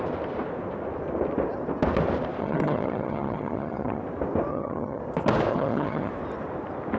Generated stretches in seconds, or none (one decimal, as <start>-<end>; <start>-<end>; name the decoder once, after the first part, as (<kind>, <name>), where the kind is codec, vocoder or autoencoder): 2.4-4.0 (vocoder, HiFi-GAN); 4.5-5.0; 5.5-6.1